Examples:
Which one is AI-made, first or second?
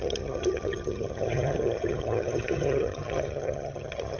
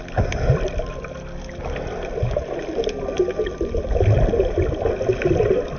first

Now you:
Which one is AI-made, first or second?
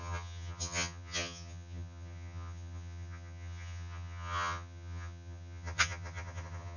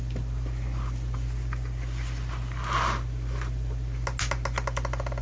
first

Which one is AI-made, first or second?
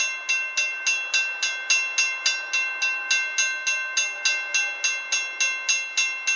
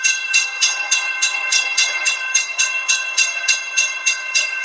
second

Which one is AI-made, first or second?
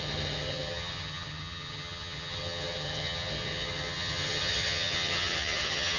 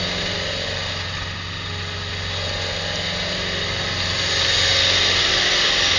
first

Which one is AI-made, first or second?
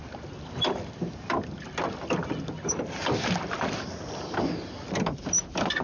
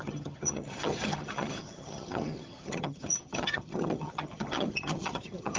second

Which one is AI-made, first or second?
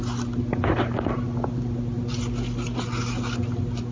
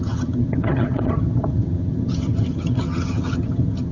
second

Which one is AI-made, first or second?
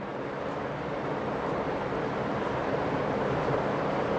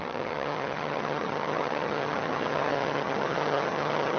second